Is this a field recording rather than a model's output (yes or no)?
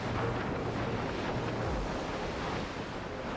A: yes